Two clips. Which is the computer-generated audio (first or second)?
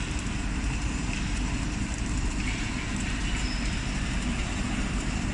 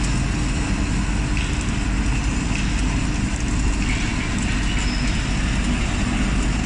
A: first